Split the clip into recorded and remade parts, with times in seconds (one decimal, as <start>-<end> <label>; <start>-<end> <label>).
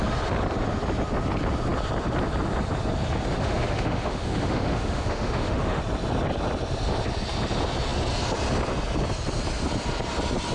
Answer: 0.0-3.4 recorded; 3.4-5.8 remade; 5.8-10.5 recorded